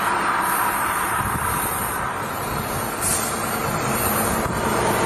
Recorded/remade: remade